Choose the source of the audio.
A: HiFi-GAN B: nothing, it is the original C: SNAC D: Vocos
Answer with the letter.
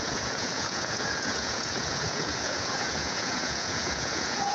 D